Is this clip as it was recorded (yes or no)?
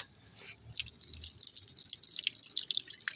yes